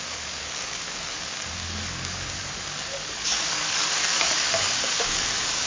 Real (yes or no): no